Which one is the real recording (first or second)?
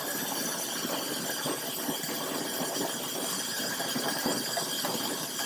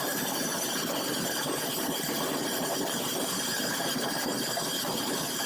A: first